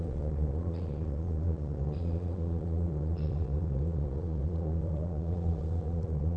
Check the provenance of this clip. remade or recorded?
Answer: remade